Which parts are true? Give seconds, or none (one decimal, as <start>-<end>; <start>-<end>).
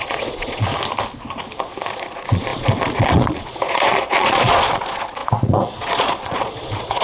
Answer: 0.7-1.9